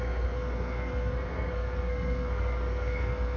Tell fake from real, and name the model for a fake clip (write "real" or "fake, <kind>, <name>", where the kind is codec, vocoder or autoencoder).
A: fake, codec, SNAC